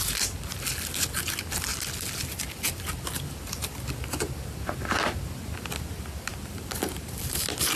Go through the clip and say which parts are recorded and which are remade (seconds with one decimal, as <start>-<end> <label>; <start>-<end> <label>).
0.0-6.3 recorded; 6.3-7.2 remade; 7.2-7.8 recorded